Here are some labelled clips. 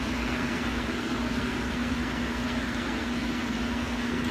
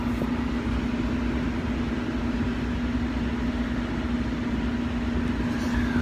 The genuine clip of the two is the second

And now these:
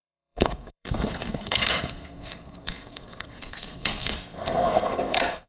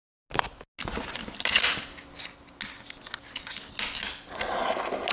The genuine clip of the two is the second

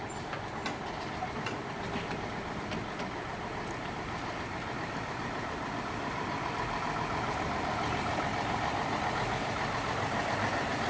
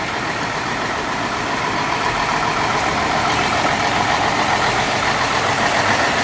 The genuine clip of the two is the second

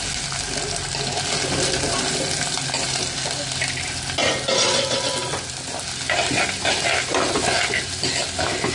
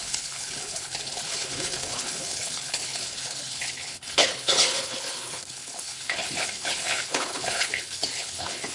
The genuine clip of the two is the first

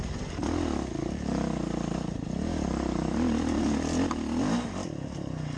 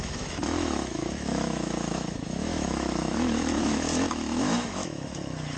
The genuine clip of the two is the first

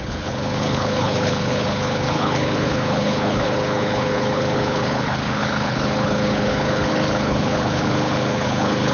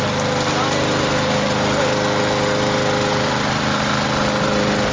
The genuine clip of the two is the second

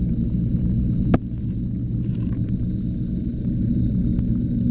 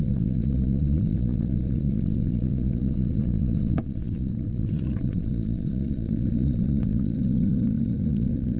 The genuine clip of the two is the first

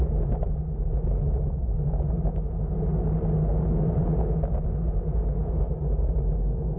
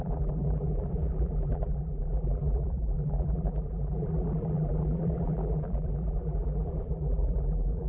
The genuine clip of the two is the first